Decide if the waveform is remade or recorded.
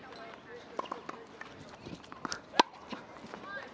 recorded